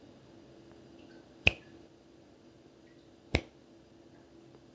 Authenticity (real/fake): real